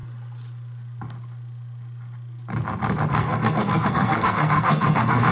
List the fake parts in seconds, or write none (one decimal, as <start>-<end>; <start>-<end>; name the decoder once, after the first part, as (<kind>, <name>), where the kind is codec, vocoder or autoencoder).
3.1-5.3 (codec, SNAC)